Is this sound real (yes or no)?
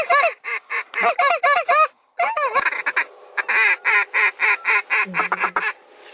yes